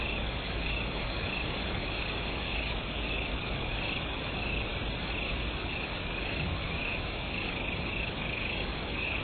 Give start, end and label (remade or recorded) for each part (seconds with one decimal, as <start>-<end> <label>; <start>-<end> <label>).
0.0-4.7 remade; 4.7-5.6 recorded; 5.6-9.2 remade

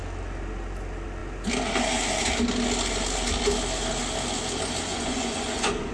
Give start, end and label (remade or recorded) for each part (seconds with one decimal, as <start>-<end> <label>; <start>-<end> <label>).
0.0-4.9 recorded; 4.9-5.9 remade

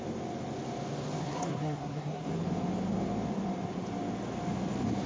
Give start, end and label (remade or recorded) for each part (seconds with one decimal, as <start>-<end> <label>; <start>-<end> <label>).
0.0-1.2 recorded; 1.2-2.3 remade; 2.3-5.1 recorded

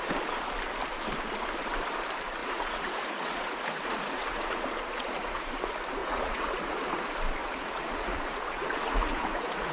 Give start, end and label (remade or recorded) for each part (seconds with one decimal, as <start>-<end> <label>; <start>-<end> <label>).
0.0-2.4 recorded; 2.4-5.5 remade; 5.5-6.0 recorded; 6.0-7.0 remade; 7.0-7.4 recorded; 7.4-9.7 remade

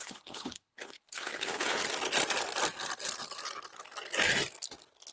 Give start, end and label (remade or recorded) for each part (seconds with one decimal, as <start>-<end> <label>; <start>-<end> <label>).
0.0-1.8 remade; 1.8-5.1 recorded

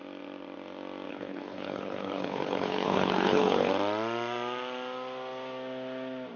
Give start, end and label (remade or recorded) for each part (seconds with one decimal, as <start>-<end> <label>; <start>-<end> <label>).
0.0-1.1 recorded; 1.1-3.7 remade; 3.7-6.4 recorded